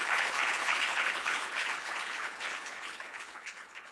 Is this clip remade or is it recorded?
remade